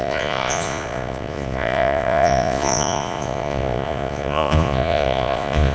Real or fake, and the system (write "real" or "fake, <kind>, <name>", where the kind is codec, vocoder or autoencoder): fake, vocoder, Vocos